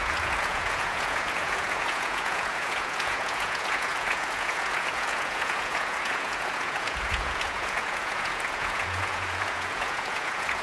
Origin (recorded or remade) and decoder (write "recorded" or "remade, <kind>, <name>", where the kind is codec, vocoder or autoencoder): remade, vocoder, Vocos